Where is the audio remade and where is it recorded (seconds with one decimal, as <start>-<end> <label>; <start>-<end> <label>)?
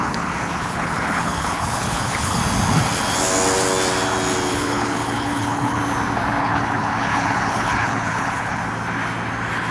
0.0-2.4 remade; 2.4-4.5 recorded; 4.5-5.8 remade; 5.8-6.4 recorded; 6.4-8.6 remade; 8.6-9.7 recorded